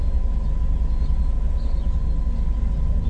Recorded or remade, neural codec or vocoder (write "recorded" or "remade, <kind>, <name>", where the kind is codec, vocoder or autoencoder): recorded